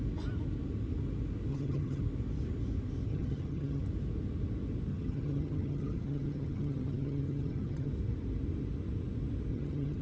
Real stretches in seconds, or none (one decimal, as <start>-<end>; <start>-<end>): 0.0-1.5; 2.0-3.1; 3.8-4.9; 7.9-9.5